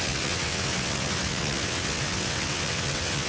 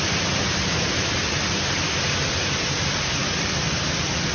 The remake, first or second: first